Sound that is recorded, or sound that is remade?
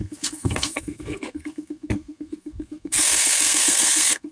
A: remade